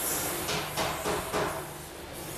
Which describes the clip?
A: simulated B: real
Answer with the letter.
B